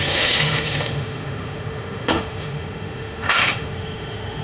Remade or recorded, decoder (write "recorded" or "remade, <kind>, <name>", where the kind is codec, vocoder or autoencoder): remade, autoencoder, DAC-VAE